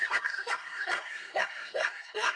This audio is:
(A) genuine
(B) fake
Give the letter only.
B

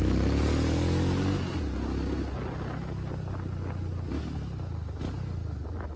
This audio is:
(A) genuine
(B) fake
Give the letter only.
A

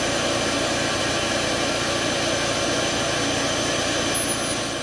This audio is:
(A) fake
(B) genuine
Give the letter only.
B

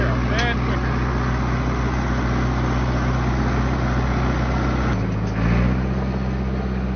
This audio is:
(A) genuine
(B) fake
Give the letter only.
A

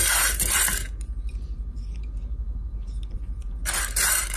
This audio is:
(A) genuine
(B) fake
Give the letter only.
B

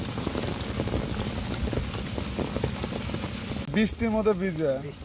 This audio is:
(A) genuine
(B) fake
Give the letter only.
A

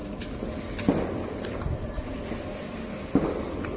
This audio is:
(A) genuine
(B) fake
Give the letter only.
A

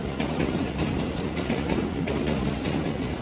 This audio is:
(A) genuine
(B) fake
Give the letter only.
B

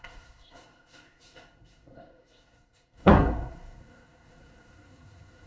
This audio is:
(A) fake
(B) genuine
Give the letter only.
A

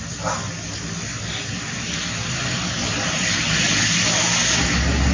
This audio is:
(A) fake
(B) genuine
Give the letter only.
B